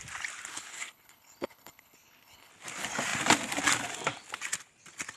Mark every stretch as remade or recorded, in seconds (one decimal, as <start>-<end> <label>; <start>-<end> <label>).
0.0-0.5 recorded; 0.5-2.5 remade; 2.5-5.2 recorded